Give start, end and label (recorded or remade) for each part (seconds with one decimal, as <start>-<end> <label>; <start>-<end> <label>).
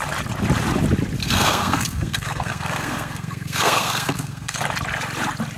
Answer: 0.0-1.2 recorded; 1.2-4.6 remade; 4.6-5.6 recorded